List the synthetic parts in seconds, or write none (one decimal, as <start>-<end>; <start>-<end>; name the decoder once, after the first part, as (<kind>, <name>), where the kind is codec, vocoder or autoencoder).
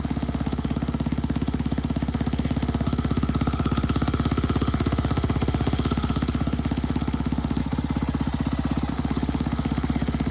0.0-7.6 (autoencoder, DAC-VAE); 8.9-10.3